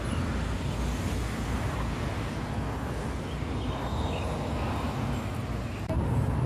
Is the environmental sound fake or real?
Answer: real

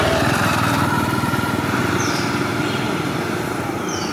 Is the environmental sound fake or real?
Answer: fake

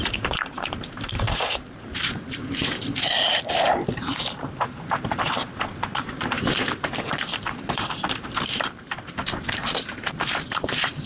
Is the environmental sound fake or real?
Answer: fake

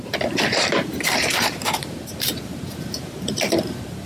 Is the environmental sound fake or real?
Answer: fake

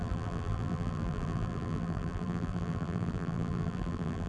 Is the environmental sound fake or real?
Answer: fake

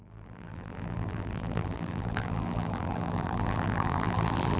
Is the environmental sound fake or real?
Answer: fake